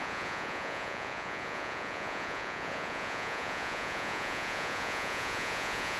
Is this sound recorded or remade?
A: remade